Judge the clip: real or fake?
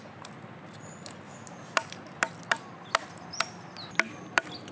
real